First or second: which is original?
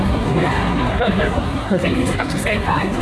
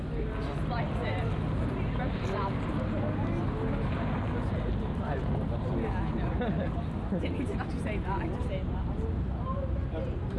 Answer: second